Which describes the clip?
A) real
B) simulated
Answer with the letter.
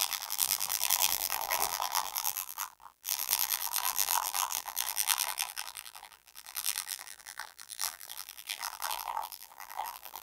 B